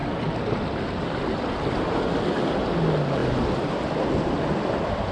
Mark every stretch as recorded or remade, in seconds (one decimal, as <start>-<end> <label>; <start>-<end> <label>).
0.0-5.1 recorded